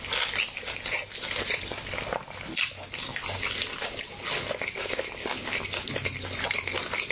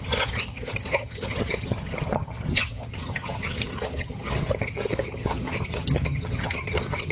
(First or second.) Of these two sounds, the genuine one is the first